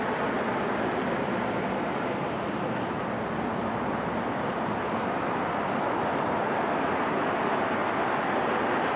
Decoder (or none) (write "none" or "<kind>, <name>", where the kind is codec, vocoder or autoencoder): none